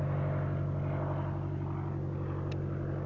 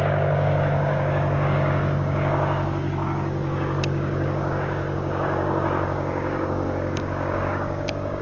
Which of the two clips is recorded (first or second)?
first